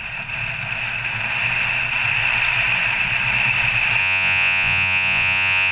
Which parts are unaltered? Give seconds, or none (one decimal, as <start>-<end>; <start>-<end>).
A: 0.0-4.0